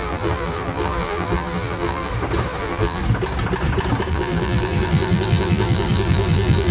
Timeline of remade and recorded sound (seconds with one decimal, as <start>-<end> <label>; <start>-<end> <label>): 0.0-2.1 remade; 2.1-2.6 recorded; 2.6-3.0 remade; 3.0-4.1 recorded; 4.1-6.7 remade